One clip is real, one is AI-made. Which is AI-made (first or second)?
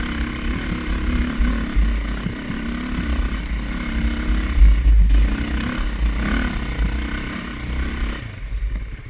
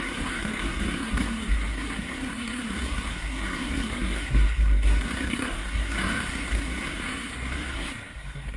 second